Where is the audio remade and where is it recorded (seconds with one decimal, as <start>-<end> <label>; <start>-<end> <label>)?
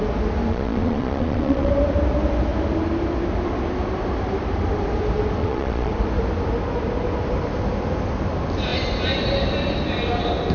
0.0-0.5 recorded; 0.5-1.7 remade; 1.7-5.4 recorded; 5.4-5.9 remade; 5.9-10.5 recorded